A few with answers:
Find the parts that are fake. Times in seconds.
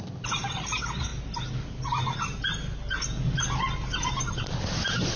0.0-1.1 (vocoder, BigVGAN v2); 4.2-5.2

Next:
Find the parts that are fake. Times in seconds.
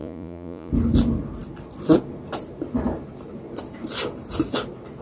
0.0-0.7 (vocoder, Vocos)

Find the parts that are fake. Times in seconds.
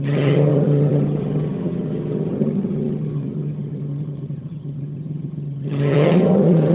0.0-6.7 (vocoder, HiFi-GAN)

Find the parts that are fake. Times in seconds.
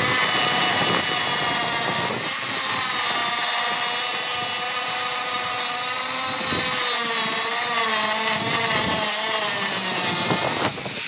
none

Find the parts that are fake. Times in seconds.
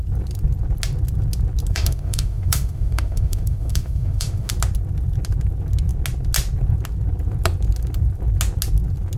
1.7-4.5 (autoencoder, DAC-VAE)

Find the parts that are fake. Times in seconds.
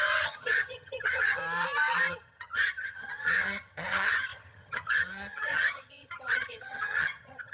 0.0-1.4 (vocoder, HiFi-GAN); 2.1-7.5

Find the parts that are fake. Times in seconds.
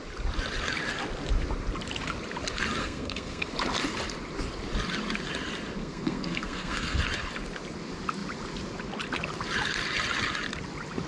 2.8-3.5 (codec, SNAC); 5.8-7.0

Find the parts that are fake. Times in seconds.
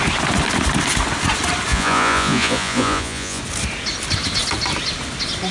1.7-3.4 (vocoder, Vocos)